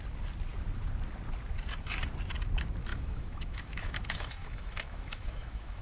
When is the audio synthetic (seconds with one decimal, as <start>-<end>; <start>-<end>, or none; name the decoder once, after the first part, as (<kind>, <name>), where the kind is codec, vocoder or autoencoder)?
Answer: 2.9-5.8 (autoencoder, DAC-VAE)